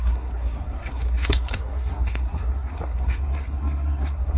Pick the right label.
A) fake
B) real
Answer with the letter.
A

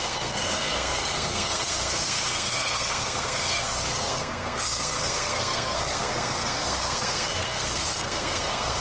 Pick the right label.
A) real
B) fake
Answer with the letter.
B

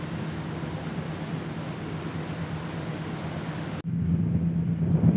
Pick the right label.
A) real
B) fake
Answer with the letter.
A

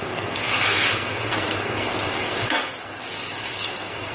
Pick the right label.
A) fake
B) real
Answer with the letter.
A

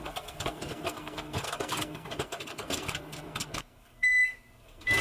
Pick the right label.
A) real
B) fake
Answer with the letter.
B